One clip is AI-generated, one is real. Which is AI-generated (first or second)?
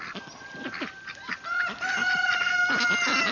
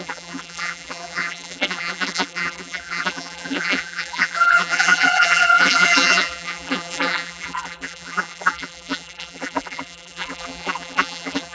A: second